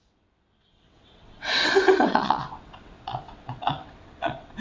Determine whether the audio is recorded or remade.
remade